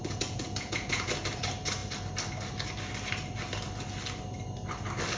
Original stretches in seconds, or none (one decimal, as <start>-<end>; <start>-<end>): 1.1-5.2